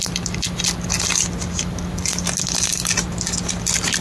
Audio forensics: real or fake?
real